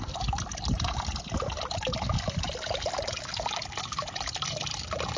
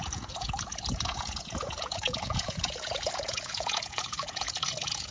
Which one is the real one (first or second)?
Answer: first